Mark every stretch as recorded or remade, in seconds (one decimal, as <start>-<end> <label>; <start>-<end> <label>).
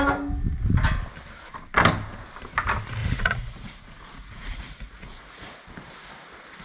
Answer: 0.0-3.0 recorded; 3.0-5.6 remade; 5.6-6.6 recorded